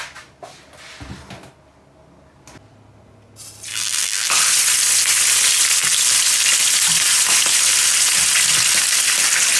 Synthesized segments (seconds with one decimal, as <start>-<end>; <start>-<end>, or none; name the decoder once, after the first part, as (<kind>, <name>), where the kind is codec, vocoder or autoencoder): 3.7-4.3 (vocoder, BigVGAN v2)